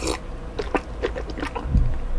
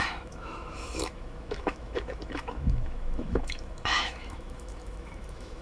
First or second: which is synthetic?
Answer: second